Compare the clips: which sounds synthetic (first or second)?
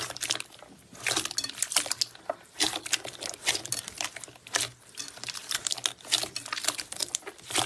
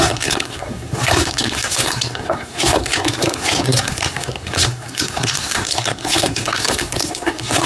second